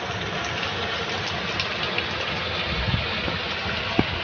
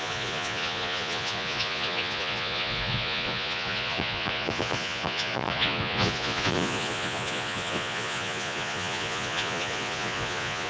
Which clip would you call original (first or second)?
first